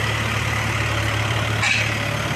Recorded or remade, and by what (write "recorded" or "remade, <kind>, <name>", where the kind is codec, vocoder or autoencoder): remade, vocoder, BigVGAN v2